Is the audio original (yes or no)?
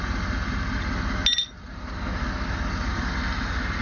yes